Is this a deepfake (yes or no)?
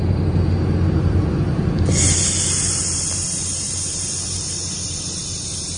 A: no